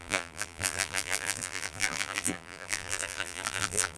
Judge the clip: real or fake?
fake